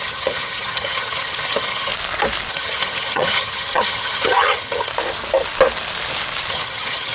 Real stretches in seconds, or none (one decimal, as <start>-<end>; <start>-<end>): 1.9-2.5; 4.9-6.5